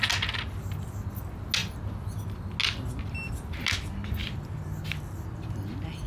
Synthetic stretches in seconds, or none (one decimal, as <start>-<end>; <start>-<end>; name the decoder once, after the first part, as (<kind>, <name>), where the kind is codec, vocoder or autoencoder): none